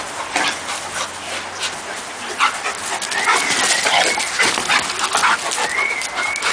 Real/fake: real